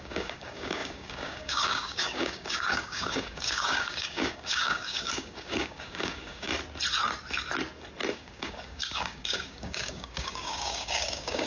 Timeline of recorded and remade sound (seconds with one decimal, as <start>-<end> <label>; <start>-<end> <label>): 0.0-6.5 remade; 6.5-8.1 recorded; 8.1-11.5 remade